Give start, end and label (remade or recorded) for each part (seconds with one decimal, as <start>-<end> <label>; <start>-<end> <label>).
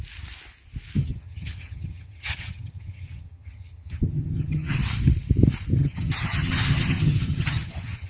0.0-1.0 recorded; 1.0-4.8 remade; 4.8-5.8 recorded; 5.8-8.1 remade